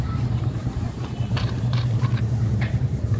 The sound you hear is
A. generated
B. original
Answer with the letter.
A